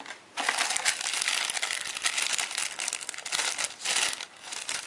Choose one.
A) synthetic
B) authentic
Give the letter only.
B